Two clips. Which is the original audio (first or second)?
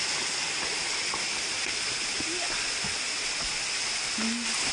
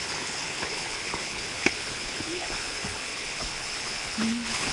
first